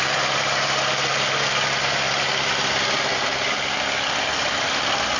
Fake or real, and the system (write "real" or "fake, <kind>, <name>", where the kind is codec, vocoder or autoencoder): real